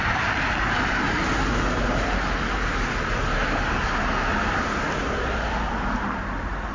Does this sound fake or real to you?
real